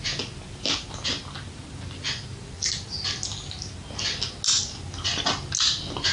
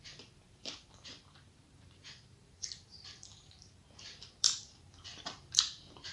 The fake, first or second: second